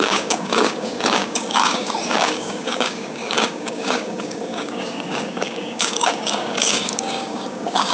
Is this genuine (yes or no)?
no